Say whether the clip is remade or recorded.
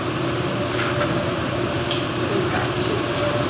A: recorded